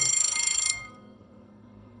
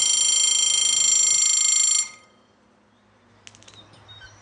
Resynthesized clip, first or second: first